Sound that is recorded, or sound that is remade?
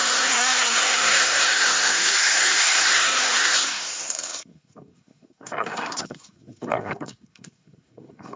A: remade